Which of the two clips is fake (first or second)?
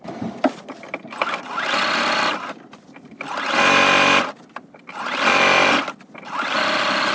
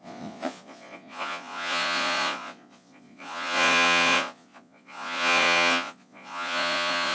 second